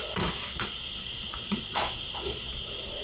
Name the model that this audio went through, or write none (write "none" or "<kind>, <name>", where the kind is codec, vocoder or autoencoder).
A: vocoder, Vocos